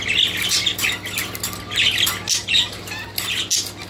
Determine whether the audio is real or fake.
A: real